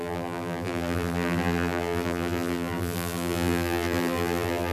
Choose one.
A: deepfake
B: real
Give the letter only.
A